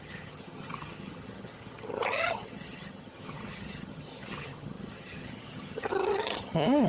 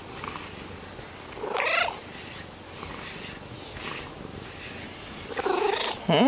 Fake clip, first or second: first